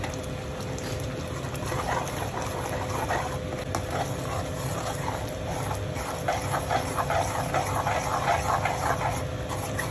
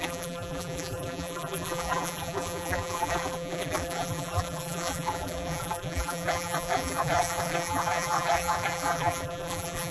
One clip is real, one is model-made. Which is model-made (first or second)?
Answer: second